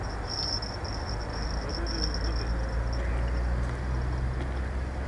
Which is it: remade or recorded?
recorded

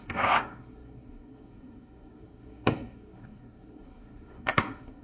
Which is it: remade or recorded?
remade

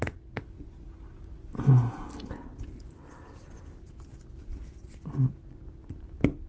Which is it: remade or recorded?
recorded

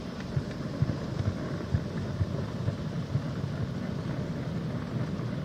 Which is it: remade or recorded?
recorded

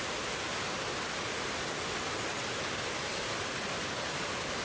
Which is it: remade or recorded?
recorded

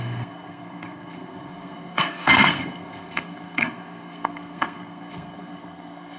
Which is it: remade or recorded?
remade